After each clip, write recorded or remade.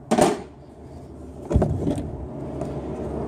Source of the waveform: recorded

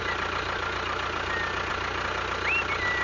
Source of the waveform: recorded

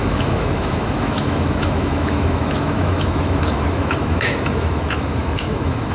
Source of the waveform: remade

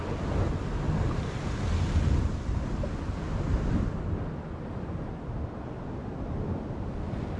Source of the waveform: recorded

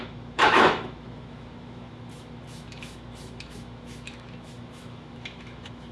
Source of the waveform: remade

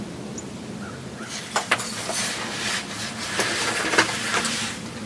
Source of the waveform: recorded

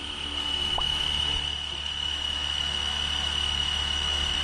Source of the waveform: remade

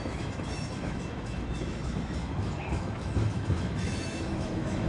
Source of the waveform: remade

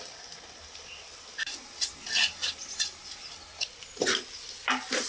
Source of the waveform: recorded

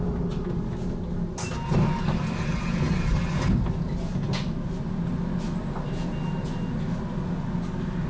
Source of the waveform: recorded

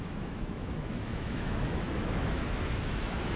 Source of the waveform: remade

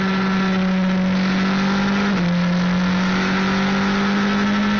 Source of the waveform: recorded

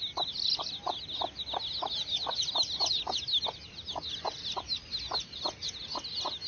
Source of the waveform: recorded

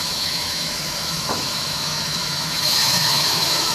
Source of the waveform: remade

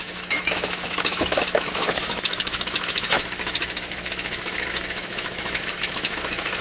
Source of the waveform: remade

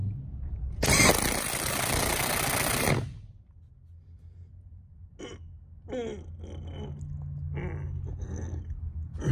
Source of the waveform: recorded